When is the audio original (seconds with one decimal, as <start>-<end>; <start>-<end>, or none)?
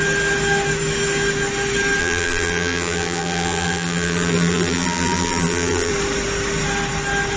0.0-2.0; 5.9-7.4